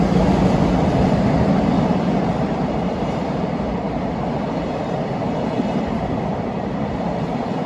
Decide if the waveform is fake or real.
fake